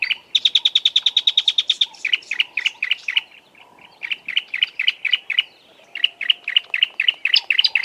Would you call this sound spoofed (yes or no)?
no